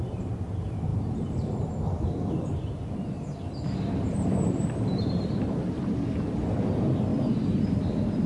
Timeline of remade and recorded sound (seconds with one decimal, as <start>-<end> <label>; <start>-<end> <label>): 0.0-0.9 recorded; 0.9-1.7 remade; 1.7-4.1 recorded; 4.1-5.8 remade; 5.8-7.1 recorded; 7.1-7.9 remade; 7.9-8.3 recorded